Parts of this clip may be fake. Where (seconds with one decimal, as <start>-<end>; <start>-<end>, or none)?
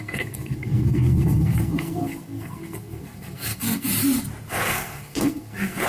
0.0-3.9; 4.5-5.9